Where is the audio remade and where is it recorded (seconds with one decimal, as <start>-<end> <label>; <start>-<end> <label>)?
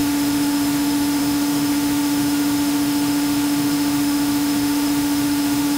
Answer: 0.0-5.8 remade